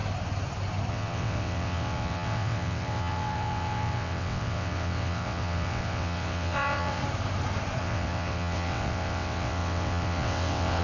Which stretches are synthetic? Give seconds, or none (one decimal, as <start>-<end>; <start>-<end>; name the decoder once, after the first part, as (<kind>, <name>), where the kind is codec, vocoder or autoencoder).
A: 0.9-7.0 (vocoder, WaveNeXt); 7.8-10.8